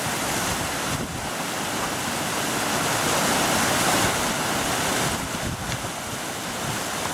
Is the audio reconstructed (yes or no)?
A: no